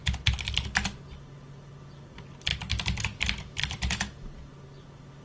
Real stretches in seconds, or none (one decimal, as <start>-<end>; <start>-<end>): 0.0-5.2